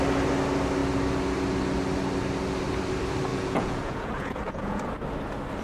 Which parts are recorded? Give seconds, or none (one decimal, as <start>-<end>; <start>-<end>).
0.0-3.3; 4.9-5.6